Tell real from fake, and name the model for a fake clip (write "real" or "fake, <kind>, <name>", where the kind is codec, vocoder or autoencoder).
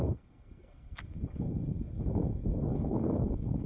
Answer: fake, codec, SNAC